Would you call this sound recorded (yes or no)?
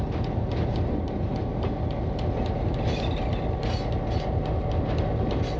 yes